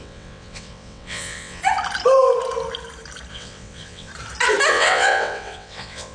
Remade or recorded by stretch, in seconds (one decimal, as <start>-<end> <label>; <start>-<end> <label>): 0.0-1.6 remade; 1.6-3.3 recorded; 3.3-4.1 remade; 4.1-4.7 recorded; 4.7-6.1 remade